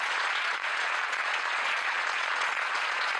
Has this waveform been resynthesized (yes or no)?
yes